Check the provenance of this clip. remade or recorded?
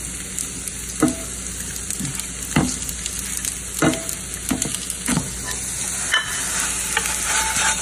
recorded